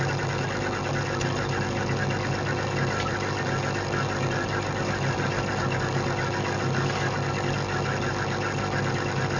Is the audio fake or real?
real